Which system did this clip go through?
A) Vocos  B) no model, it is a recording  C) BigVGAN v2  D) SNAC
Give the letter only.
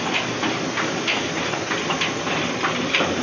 B